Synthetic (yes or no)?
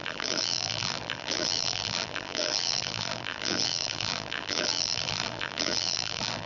yes